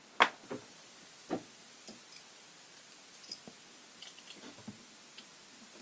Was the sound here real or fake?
real